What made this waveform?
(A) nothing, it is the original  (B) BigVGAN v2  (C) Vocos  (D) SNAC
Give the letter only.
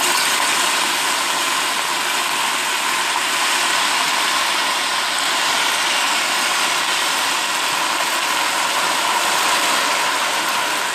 A